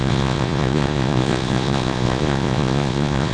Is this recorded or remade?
remade